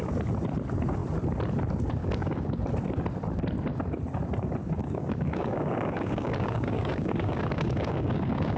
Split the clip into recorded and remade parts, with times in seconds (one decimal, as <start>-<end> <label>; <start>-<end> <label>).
0.0-2.0 recorded; 2.0-2.6 remade; 2.6-4.8 recorded; 4.8-8.6 remade